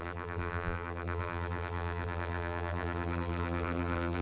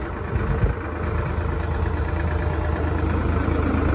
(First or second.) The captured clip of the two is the second